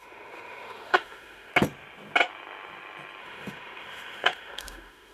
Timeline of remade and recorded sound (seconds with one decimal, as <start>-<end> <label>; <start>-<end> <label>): 0.0-1.5 remade; 1.5-3.2 recorded; 3.2-5.1 remade